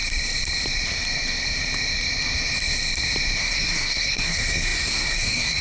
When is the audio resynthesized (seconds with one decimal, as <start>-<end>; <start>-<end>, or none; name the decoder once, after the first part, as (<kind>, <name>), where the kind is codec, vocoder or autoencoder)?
3.4-5.6 (codec, SNAC)